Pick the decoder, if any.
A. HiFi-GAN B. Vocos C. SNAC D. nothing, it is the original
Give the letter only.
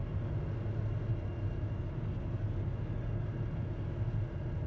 D